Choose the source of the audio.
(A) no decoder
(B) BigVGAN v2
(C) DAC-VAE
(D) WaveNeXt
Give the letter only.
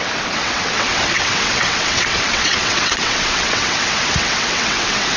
D